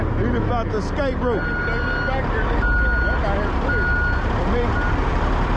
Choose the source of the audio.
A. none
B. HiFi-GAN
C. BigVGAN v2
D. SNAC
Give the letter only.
A